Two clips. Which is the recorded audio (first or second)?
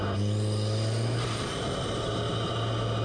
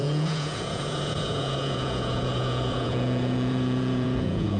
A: first